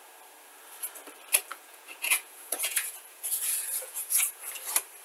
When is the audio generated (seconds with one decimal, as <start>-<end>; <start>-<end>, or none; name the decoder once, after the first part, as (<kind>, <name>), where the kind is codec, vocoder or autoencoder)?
1.5-4.5 (vocoder, Vocos)